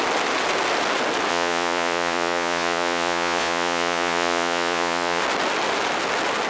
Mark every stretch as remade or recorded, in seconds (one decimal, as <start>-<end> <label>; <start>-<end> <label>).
0.0-1.3 recorded; 1.3-5.2 remade; 5.2-6.5 recorded